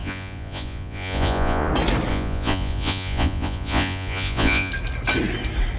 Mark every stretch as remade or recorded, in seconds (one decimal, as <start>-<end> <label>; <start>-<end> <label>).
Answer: 0.0-1.7 remade; 1.7-2.1 recorded; 2.1-4.7 remade; 4.7-5.8 recorded